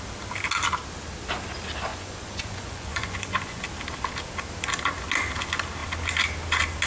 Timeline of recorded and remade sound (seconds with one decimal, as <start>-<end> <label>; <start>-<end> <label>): 0.0-1.9 recorded; 1.9-3.6 remade; 3.6-6.9 recorded